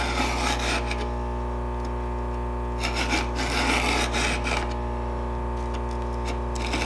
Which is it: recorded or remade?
recorded